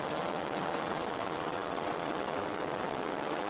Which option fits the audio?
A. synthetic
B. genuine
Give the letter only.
A